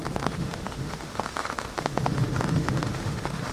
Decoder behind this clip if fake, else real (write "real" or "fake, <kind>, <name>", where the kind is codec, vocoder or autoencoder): fake, autoencoder, DAC-VAE